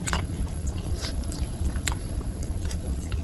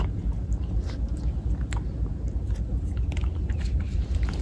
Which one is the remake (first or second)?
first